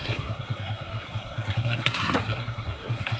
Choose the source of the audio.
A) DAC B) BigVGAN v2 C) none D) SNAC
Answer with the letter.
D